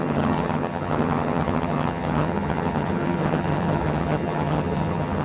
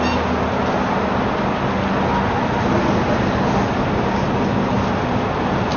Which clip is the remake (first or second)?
first